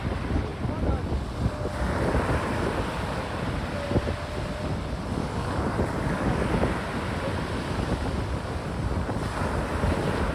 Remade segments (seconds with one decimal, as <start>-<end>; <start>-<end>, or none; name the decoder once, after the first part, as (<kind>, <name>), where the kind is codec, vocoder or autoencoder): 5.2-6.5 (codec, DAC)